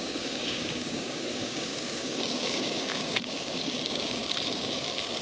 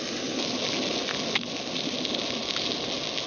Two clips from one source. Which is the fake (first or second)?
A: first